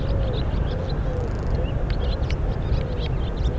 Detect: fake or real real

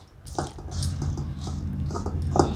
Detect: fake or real real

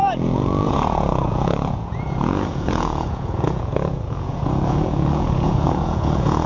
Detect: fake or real fake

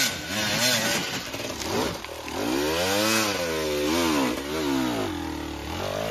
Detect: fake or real real